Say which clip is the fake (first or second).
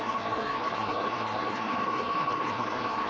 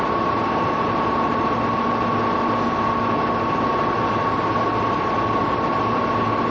first